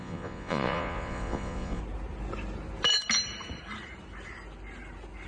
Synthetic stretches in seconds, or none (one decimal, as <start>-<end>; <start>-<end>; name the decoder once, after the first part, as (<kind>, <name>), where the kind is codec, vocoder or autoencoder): 0.0-1.8 (vocoder, Vocos)